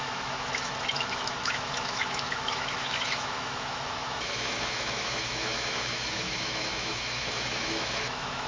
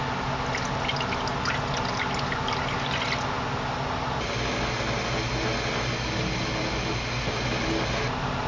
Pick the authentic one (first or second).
second